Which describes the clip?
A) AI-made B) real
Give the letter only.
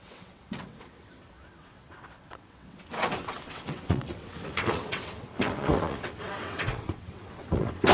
A